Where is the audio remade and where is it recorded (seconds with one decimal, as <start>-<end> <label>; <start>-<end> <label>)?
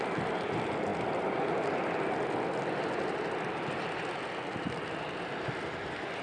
0.0-6.2 recorded